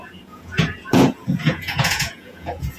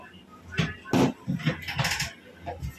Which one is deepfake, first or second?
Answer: first